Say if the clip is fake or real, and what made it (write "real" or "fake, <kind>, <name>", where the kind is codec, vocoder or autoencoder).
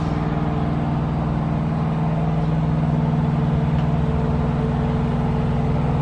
real